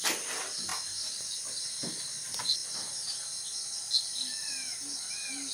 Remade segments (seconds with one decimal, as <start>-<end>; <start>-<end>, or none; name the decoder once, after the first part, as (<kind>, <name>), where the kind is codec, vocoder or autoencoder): none